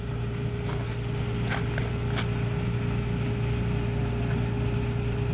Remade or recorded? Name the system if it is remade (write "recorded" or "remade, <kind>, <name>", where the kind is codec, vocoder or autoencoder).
recorded